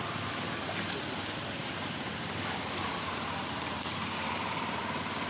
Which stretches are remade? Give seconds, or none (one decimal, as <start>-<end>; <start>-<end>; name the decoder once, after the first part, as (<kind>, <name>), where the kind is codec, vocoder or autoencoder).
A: 1.6-4.8 (vocoder, BigVGAN v2)